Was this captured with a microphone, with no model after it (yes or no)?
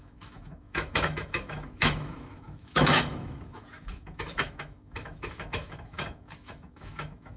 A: no